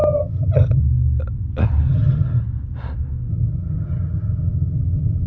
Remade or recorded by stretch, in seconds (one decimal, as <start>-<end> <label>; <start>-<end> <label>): 0.0-0.8 remade; 0.8-1.9 recorded; 1.9-2.4 remade; 2.4-3.3 recorded; 3.3-5.3 remade